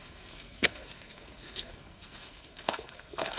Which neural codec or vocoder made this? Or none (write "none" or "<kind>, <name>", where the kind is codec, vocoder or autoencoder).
codec, SNAC